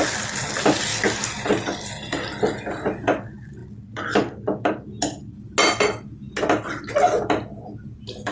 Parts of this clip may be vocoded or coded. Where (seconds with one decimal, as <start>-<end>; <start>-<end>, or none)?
none